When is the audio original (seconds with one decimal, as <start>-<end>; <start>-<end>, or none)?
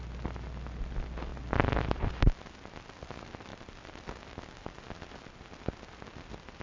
0.0-6.6